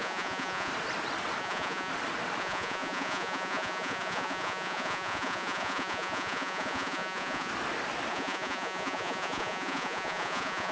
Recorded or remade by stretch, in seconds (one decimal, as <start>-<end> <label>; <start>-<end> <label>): 0.0-0.7 remade; 0.7-1.4 recorded; 1.4-1.9 remade; 1.9-2.4 recorded; 2.4-7.5 remade; 7.5-8.1 recorded; 8.1-10.7 remade